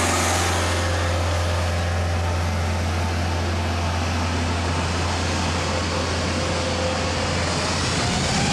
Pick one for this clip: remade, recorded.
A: recorded